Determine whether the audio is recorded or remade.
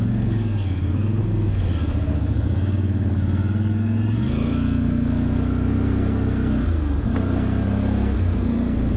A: remade